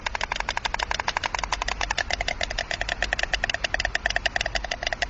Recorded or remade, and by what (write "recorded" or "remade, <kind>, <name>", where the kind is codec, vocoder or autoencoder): recorded